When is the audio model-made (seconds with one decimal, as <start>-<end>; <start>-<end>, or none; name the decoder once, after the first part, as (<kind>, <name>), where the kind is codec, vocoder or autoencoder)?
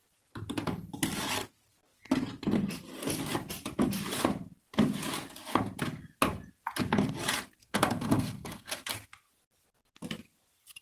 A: 7.6-8.9 (codec, SNAC)